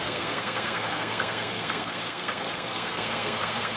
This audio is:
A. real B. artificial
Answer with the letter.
B